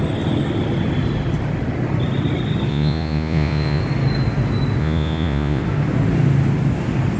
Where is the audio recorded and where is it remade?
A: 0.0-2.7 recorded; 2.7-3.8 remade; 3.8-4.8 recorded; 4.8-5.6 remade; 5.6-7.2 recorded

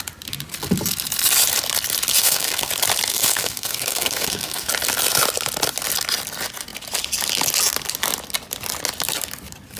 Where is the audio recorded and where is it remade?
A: 0.0-2.2 recorded; 2.2-2.7 remade; 2.7-3.1 recorded; 3.1-4.7 remade; 4.7-9.8 recorded

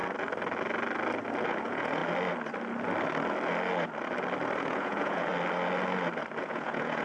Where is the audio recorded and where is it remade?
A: 0.0-1.6 recorded; 1.6-2.0 remade; 2.0-4.6 recorded; 4.6-5.3 remade; 5.3-6.4 recorded; 6.4-7.0 remade

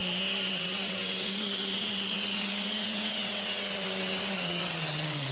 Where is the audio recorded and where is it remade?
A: 0.0-0.5 recorded; 0.5-5.3 remade

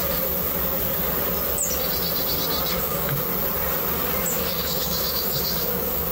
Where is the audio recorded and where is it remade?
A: 0.0-2.8 recorded; 2.8-3.3 remade; 3.3-4.3 recorded; 4.3-6.1 remade